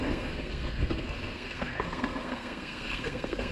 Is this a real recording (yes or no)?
no